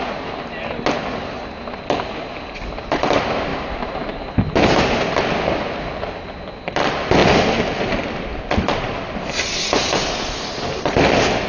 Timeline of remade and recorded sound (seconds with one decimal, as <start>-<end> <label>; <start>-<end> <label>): 0.0-3.5 recorded; 3.5-5.2 remade; 5.2-11.5 recorded